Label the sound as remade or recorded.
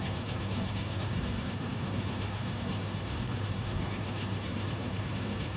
remade